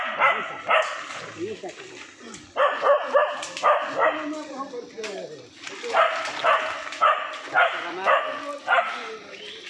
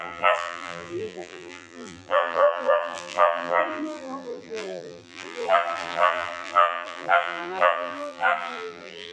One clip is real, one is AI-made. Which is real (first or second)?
first